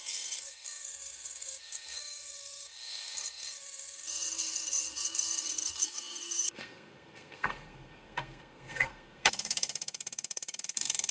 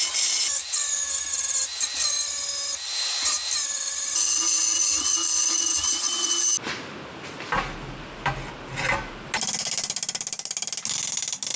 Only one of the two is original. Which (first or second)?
second